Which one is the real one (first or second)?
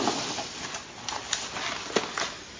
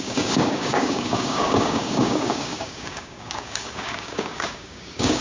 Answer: first